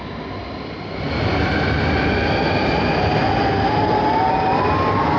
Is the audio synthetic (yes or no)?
no